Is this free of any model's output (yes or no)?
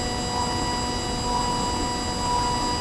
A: yes